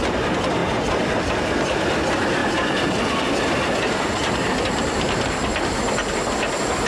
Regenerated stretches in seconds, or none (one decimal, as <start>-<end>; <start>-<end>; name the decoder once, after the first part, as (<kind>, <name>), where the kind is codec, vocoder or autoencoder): none